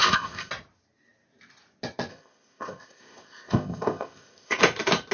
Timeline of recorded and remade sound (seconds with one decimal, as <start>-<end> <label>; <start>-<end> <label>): 0.0-0.5 remade; 0.5-2.1 recorded; 2.1-4.6 remade; 4.6-5.1 recorded